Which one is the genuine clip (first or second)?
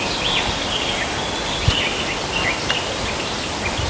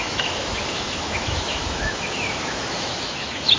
first